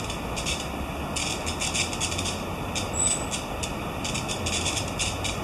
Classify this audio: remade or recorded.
recorded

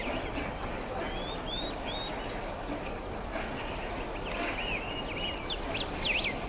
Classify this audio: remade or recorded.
recorded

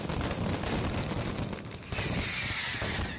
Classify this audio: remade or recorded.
recorded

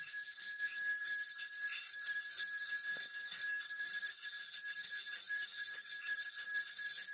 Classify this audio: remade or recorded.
remade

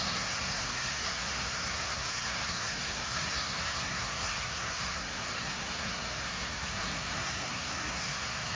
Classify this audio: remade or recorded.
remade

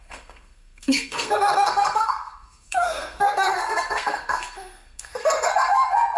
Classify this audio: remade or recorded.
remade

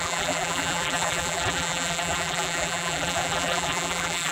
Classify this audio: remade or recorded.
remade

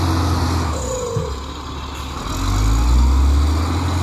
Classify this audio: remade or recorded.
recorded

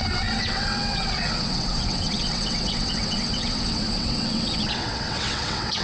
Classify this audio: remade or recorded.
remade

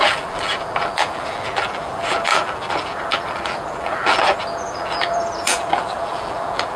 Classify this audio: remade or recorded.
remade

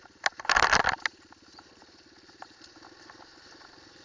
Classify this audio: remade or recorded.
recorded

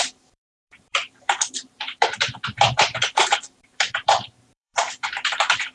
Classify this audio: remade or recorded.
remade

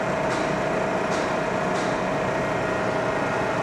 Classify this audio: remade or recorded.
recorded